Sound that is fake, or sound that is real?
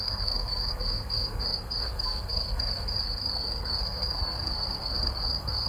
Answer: fake